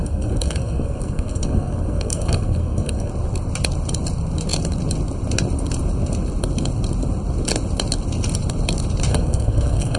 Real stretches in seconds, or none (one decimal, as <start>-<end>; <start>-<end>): 3.1-9.1